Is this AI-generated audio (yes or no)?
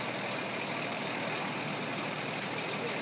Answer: no